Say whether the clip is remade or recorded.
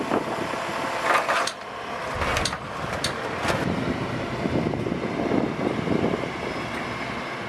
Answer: recorded